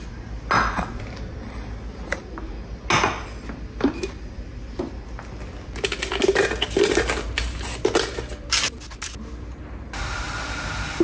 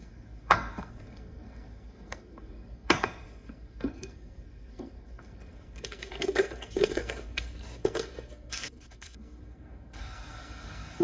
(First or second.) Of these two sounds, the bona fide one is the first